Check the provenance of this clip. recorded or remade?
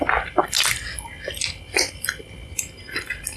recorded